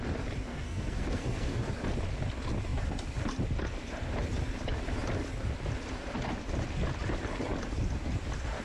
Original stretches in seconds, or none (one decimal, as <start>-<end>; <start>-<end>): 0.0-0.5; 1.7-8.6